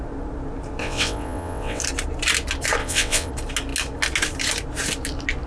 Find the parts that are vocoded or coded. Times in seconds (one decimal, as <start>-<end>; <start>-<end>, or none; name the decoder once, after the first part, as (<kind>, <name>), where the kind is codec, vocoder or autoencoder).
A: 0.8-1.8 (vocoder, WaveNeXt); 2.8-3.3